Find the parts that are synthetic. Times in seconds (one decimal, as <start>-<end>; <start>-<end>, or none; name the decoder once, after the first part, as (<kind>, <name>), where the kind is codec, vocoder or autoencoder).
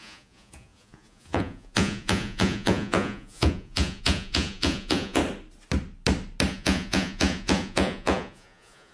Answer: 0.0-5.2 (vocoder, Vocos); 6.5-8.9